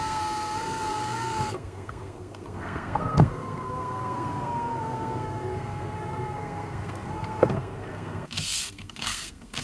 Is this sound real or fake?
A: fake